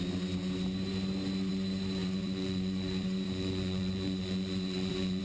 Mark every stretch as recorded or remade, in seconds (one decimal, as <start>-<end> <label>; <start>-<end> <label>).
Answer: 0.0-2.0 recorded; 2.0-5.2 remade